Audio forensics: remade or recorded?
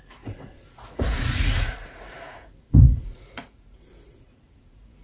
remade